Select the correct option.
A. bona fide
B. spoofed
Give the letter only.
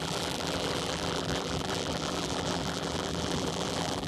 B